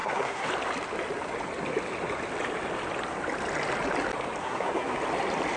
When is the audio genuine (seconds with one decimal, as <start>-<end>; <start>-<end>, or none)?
0.5-4.4; 5.0-5.6